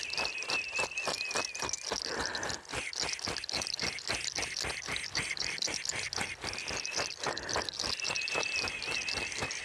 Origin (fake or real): real